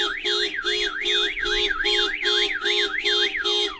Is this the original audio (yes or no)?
yes